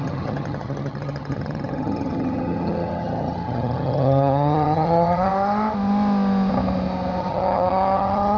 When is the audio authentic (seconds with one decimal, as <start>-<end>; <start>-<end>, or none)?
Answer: 5.3-7.2